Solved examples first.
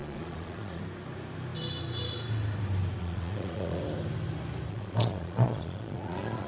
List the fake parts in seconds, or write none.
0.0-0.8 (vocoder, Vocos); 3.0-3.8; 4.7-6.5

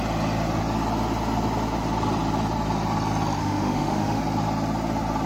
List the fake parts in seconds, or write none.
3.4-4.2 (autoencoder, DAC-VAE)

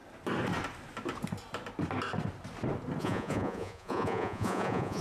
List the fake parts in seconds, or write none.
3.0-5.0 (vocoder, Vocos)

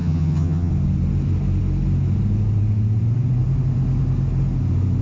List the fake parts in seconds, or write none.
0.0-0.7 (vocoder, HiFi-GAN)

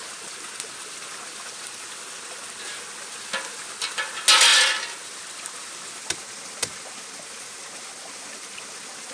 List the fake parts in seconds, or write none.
none